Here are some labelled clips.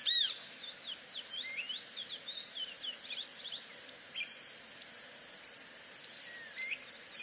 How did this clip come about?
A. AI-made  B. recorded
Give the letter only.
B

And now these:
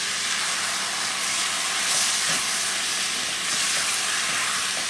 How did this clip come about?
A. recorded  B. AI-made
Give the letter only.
A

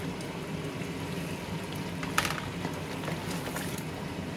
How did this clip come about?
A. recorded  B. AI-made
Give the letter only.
A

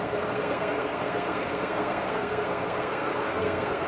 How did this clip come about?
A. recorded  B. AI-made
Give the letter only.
B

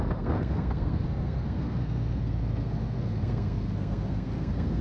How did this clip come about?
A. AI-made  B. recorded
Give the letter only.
A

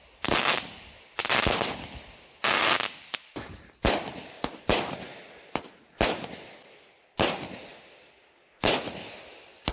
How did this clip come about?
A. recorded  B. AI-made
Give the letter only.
A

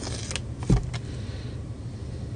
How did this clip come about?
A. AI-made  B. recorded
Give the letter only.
B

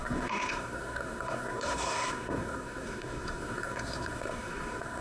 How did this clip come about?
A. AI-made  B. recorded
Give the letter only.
A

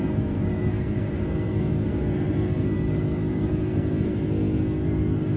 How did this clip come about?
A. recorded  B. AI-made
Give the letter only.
B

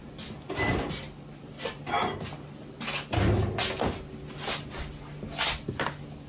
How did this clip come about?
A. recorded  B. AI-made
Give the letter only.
A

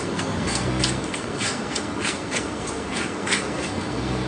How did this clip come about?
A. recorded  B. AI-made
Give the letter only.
B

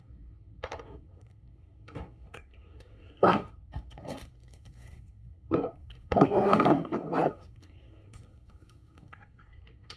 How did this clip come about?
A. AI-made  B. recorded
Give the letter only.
A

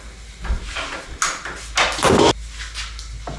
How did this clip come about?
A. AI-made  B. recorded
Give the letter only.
B